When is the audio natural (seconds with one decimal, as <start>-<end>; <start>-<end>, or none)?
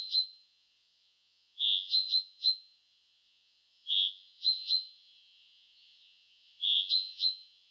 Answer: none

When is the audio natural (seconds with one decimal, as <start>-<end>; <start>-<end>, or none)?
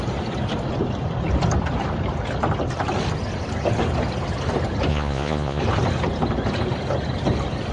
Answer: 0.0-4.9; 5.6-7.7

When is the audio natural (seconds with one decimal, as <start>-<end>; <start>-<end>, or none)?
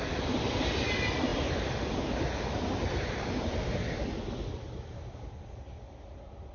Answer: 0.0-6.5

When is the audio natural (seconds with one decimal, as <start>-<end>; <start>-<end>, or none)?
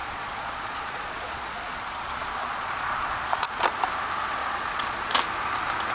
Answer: 3.5-4.4; 5.0-5.9